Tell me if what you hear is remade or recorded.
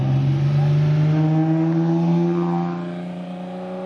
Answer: recorded